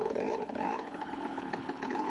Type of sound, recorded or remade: remade